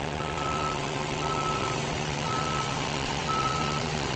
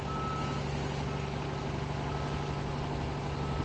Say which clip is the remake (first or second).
first